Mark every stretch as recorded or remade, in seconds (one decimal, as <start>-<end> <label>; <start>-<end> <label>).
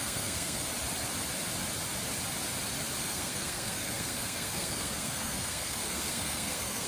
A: 0.0-0.7 remade; 0.7-3.0 recorded; 3.0-6.9 remade